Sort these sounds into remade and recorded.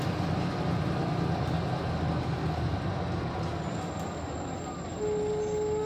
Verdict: recorded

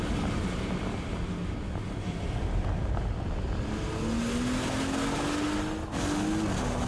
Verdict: recorded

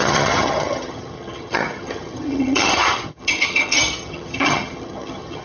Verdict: remade